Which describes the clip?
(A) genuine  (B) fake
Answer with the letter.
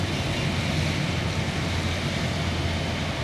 A